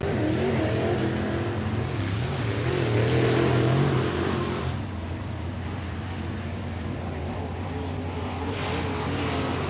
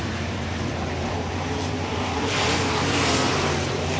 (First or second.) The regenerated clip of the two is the second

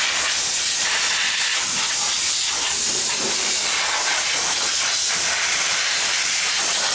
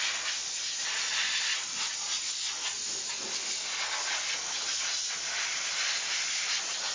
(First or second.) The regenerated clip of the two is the first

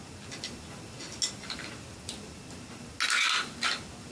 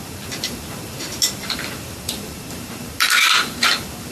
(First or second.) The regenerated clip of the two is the second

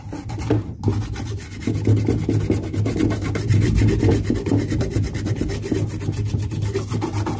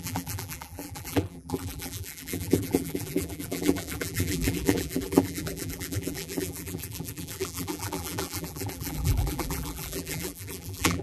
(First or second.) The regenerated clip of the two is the second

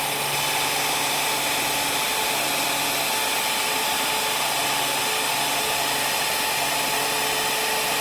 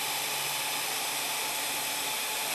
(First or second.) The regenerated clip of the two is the second